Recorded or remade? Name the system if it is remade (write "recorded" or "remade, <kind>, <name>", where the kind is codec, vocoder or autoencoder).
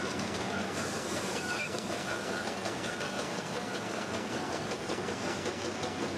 remade, codec, SNAC